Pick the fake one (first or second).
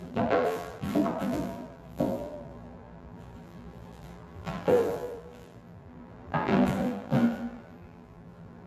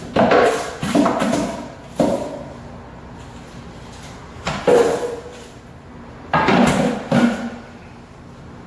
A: first